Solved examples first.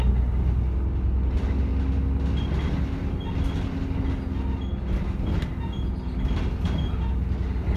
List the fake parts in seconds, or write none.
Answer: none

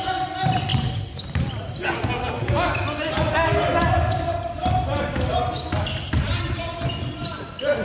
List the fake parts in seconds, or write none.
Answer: none

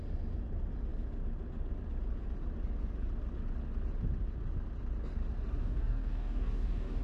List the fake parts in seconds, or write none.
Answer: 5.6-7.0 (codec, DAC)

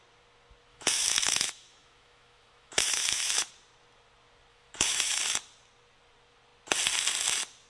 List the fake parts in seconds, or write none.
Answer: 0.7-3.5 (autoencoder, DAC-VAE); 4.5-5.2

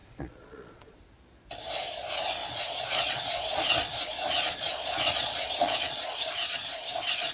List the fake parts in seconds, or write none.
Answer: 0.0-1.0 (vocoder, Vocos); 2.4-6.8

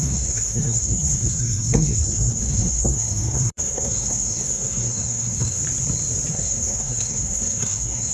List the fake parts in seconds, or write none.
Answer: 0.0-5.6 (codec, SNAC); 6.3-8.1

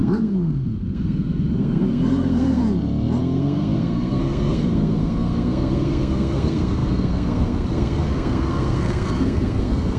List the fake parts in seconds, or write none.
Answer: 0.0-2.6 (codec, SNAC); 3.2-10.0